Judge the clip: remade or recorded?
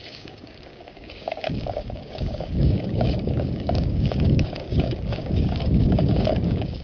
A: remade